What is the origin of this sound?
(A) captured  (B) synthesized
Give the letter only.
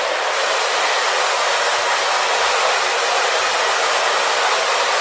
A